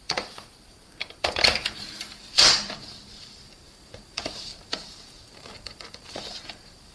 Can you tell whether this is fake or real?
fake